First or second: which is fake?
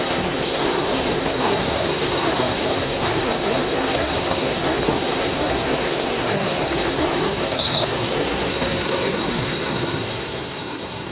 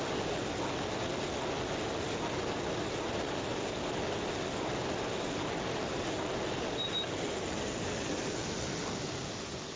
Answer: first